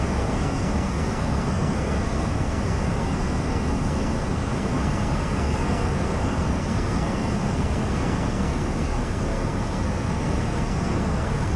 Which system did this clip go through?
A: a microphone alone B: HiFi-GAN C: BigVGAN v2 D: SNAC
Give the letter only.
D